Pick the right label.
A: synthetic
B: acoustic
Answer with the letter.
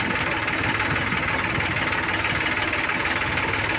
B